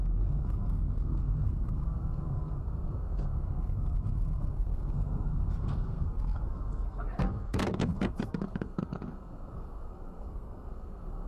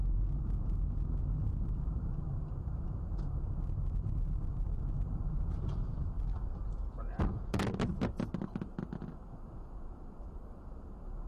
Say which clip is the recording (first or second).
second